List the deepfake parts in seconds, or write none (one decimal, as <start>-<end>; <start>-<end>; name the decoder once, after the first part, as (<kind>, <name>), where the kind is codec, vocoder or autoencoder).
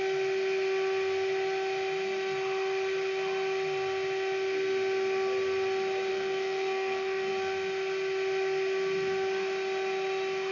6.1-7.3 (codec, SNAC)